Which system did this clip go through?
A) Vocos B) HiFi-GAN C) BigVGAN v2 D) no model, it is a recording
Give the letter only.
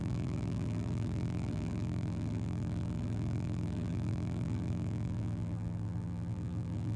C